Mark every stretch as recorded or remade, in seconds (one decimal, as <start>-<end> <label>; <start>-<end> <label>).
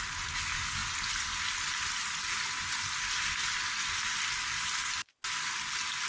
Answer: 0.0-6.1 recorded